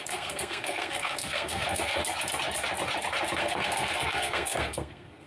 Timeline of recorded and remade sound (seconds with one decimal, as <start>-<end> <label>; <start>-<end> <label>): 0.0-2.0 remade; 2.0-3.4 recorded; 3.4-5.3 remade